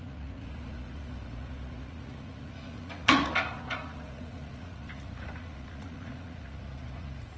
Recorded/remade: remade